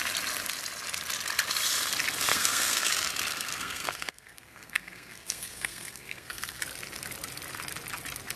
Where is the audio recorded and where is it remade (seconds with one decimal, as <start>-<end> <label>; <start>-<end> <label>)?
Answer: 0.0-2.3 recorded; 2.3-2.9 remade; 2.9-3.3 recorded; 3.3-6.6 remade; 6.6-8.4 recorded